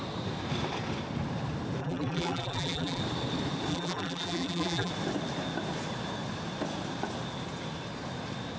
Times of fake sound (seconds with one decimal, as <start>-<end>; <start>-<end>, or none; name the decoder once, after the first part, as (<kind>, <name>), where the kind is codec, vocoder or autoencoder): 1.8-3.0 (vocoder, BigVGAN v2); 3.7-4.9